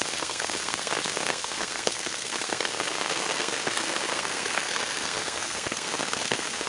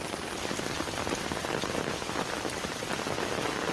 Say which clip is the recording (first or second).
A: second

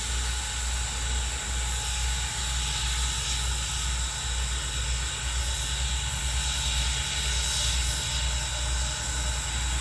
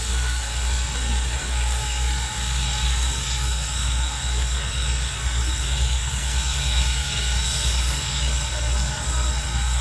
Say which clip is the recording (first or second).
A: first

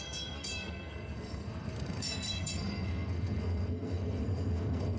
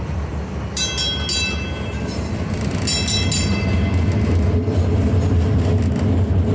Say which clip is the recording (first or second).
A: second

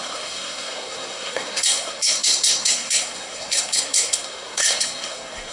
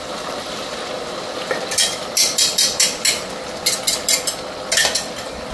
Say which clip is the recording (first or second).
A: second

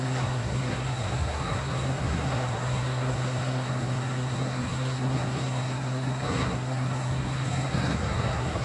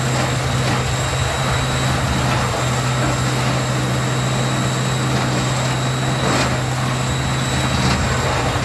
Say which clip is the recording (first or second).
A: second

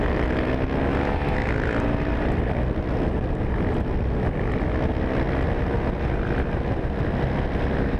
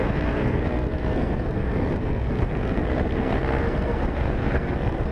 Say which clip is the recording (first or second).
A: first